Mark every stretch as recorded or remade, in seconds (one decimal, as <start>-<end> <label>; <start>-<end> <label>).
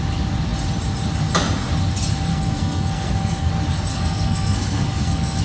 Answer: 0.0-2.3 recorded; 2.3-3.5 remade; 3.5-3.9 recorded; 3.9-5.4 remade